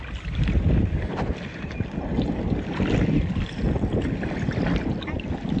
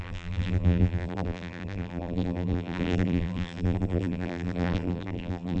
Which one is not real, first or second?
second